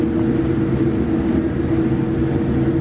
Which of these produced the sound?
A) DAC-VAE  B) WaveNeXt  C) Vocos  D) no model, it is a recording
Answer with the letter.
D